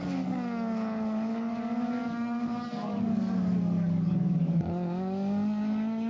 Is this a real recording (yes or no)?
no